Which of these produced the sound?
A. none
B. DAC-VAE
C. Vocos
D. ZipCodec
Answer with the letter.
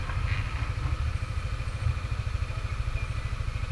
A